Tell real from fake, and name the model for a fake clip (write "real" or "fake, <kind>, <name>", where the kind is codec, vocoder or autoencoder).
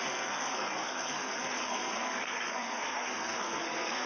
fake, codec, SNAC